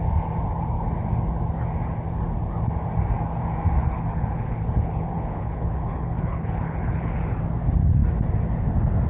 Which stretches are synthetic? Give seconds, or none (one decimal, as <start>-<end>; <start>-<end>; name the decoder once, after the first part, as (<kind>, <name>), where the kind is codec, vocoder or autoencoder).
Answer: 3.8-7.2 (codec, HILCodec)